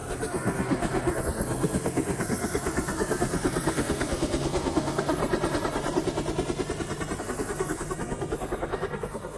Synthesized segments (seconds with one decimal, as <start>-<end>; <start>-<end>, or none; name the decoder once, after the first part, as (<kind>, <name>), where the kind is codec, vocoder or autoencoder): 0.0-5.2 (codec, SNAC); 7.2-9.4

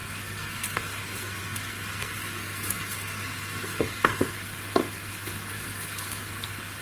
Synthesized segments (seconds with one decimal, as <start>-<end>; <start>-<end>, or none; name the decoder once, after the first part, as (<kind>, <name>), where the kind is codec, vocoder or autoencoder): 0.0-6.8 (codec, SNAC)

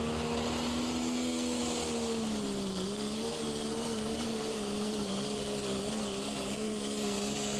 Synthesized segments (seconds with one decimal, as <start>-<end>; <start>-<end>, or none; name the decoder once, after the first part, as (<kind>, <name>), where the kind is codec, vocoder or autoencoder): 1.0-1.6 (codec, SNAC); 2.7-7.6

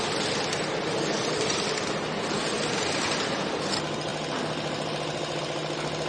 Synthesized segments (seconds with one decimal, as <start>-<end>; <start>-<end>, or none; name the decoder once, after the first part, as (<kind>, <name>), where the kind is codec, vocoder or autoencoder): none

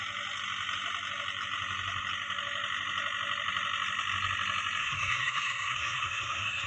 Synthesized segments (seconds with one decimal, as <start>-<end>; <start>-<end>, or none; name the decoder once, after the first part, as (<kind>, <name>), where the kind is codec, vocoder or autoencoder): 4.8-6.7 (codec, SNAC)